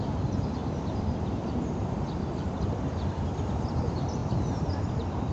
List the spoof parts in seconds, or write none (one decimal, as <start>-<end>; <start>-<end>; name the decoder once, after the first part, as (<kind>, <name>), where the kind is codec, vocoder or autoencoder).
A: 0.0-5.3 (vocoder, BigVGAN v2)